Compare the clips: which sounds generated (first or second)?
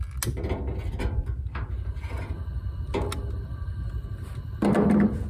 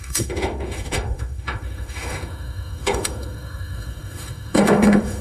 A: second